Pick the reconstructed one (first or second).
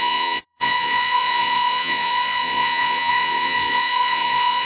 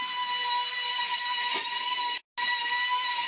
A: first